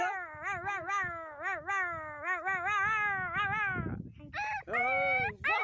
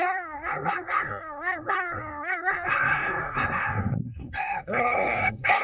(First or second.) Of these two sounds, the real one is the first